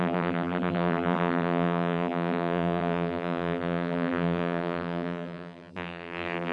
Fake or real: fake